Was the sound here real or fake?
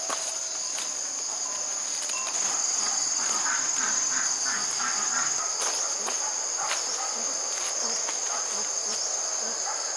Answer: real